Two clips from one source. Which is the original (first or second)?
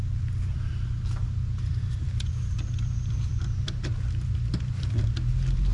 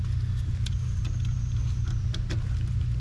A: second